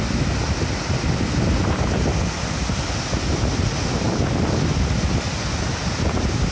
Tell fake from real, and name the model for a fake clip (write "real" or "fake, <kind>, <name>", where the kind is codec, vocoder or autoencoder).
real